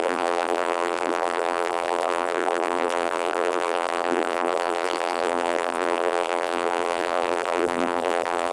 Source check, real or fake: fake